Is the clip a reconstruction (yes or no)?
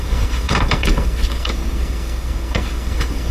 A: yes